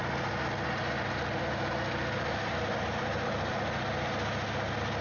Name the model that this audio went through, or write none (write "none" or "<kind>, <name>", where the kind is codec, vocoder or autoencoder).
none